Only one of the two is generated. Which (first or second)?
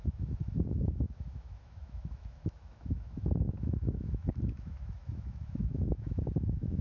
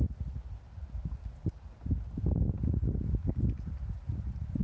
first